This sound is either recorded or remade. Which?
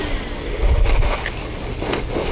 recorded